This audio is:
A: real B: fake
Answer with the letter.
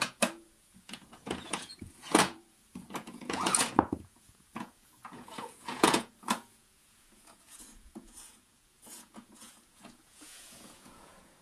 B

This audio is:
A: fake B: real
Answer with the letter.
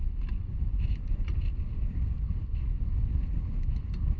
B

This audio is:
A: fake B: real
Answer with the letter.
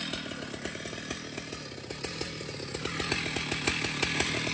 B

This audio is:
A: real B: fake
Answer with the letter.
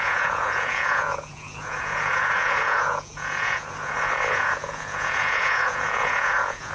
B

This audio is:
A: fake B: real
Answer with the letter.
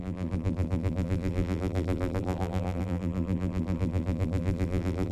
A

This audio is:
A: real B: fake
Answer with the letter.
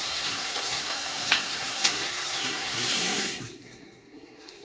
B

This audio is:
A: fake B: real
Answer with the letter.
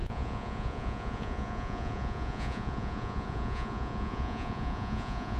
A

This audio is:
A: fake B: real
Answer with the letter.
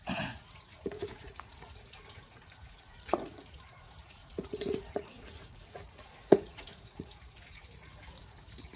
A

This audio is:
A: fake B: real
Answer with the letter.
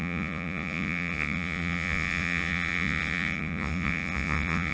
A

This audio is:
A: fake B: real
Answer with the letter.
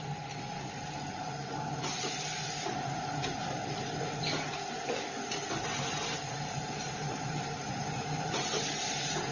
B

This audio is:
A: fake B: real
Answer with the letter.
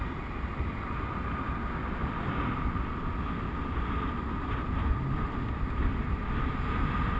B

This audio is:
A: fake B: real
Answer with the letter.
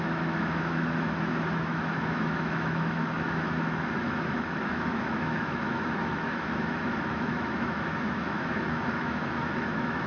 A